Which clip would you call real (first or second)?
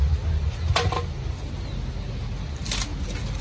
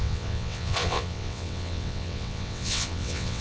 first